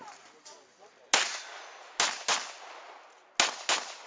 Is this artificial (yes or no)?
no